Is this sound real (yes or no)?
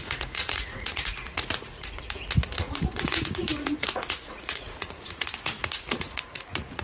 no